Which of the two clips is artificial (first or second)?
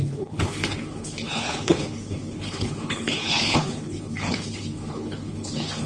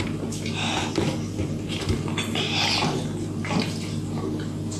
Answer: first